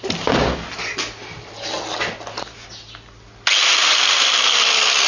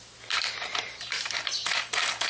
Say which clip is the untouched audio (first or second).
first